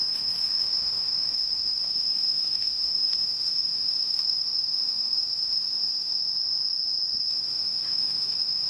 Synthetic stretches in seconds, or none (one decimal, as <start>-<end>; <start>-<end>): 0.0-6.2; 7.3-8.7